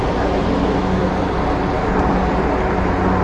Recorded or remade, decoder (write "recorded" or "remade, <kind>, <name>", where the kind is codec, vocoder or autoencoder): recorded